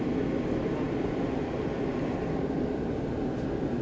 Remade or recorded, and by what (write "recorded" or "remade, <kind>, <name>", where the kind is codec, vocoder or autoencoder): recorded